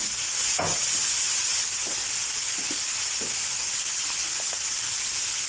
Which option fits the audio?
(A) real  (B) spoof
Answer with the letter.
A